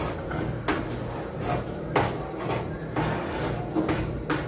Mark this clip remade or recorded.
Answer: recorded